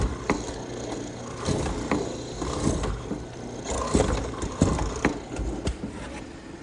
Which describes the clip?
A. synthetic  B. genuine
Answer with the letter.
B